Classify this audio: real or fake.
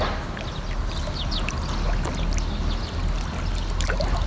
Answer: real